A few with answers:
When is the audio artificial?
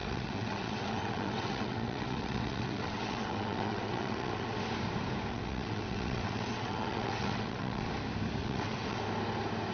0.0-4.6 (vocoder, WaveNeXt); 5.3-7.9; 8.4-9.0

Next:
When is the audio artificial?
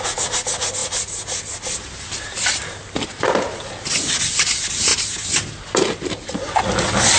none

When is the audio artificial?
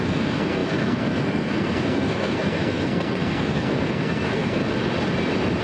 0.0-4.6 (codec, SNAC)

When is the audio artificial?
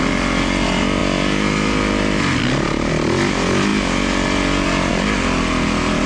none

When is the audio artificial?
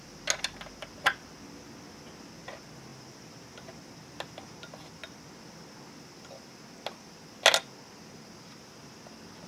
none